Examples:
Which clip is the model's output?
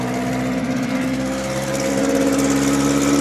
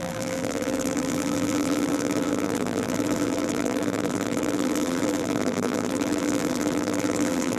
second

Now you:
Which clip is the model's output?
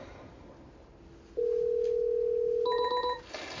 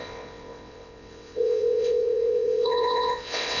second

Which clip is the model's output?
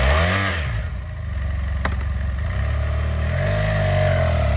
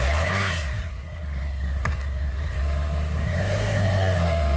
second